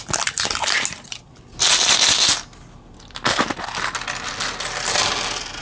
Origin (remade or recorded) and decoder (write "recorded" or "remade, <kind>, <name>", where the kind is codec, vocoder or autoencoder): recorded